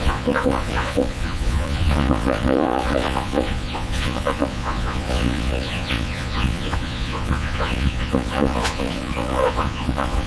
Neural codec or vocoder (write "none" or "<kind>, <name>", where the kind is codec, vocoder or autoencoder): vocoder, Vocos